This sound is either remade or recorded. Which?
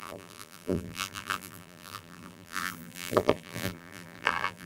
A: remade